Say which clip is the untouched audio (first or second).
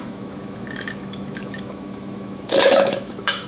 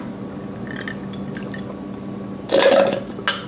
second